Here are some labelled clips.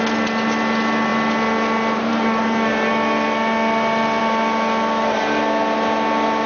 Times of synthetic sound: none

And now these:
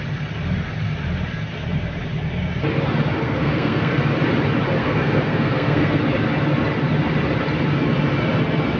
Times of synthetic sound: 3.2-4.0 (codec, SNAC); 4.8-6.0

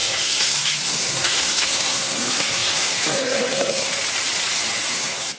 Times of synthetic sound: 0.0-3.9 (codec, SNAC); 4.9-5.4

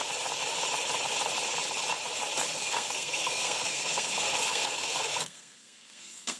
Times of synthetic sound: 2.5-6.4 (codec, SNAC)

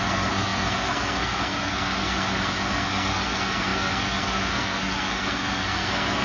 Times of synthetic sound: 0.0-6.2 (codec, SNAC)